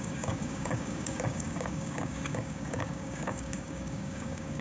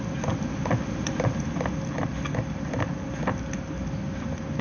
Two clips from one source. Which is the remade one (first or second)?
first